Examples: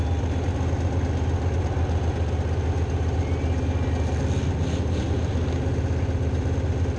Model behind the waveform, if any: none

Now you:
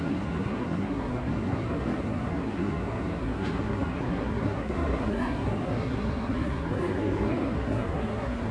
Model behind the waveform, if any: codec, SNAC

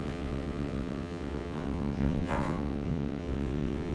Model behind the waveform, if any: vocoder, WaveNeXt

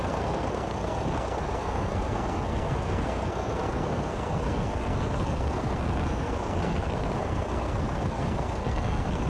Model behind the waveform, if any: codec, SNAC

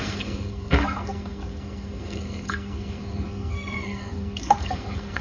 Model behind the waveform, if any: codec, SNAC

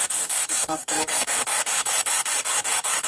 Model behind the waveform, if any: codec, DAC